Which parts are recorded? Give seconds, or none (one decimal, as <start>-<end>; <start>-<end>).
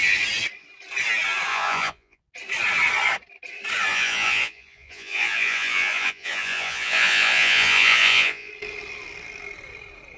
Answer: 0.0-1.5; 2.2-3.9; 8.5-10.2